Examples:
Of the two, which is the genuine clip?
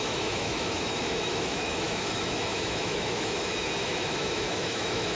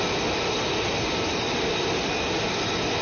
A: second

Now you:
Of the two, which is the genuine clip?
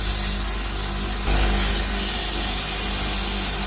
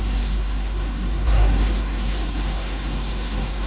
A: first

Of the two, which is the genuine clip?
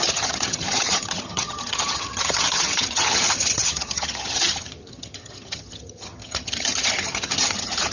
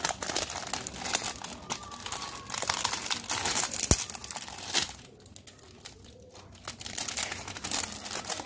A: second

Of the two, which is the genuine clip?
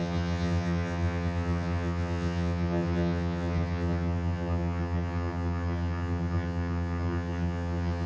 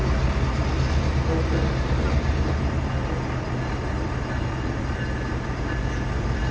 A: second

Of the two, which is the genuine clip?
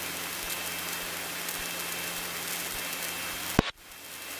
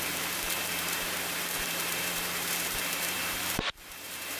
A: first